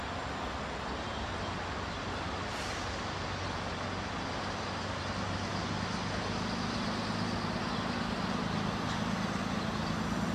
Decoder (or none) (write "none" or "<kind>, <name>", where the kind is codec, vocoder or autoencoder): none